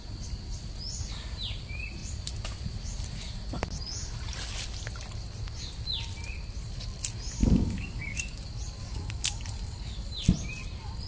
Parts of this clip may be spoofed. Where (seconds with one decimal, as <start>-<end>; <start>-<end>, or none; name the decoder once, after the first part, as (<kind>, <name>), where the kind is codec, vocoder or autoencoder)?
7.4-8.4 (codec, DAC); 8.8-9.4